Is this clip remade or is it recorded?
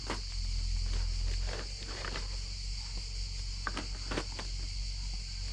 recorded